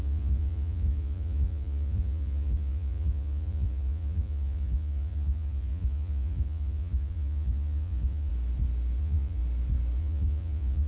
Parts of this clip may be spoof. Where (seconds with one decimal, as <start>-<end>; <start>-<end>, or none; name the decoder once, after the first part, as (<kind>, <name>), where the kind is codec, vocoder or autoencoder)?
0.0-8.3 (vocoder, Vocos); 9.0-9.4; 10.0-10.9